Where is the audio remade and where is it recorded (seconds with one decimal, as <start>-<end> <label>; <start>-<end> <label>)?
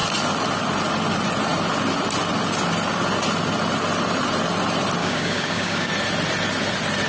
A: 0.0-5.0 recorded; 5.0-5.9 remade; 5.9-7.1 recorded